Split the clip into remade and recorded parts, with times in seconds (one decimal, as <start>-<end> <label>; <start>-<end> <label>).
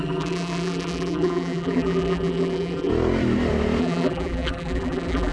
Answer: 0.0-2.9 remade; 2.9-3.8 recorded; 3.8-5.3 remade